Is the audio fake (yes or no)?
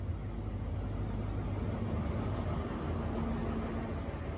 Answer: no